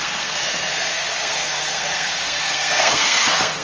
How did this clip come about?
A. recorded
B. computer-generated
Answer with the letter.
B